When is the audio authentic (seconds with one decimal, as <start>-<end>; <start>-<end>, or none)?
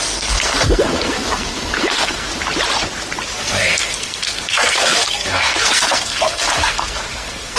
2.3-3.3